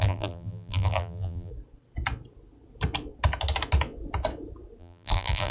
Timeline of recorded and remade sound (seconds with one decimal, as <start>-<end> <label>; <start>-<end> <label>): 0.0-1.5 remade; 1.5-4.8 recorded; 4.8-5.5 remade